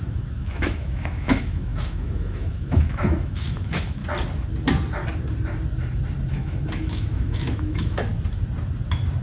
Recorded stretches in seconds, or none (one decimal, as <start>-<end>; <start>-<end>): 4.0-6.3; 8.1-9.2